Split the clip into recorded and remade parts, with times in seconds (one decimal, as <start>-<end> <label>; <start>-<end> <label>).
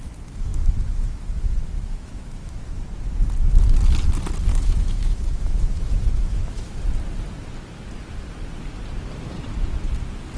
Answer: 0.0-0.5 recorded; 0.5-2.5 remade; 2.5-4.5 recorded; 4.5-6.8 remade; 6.8-10.4 recorded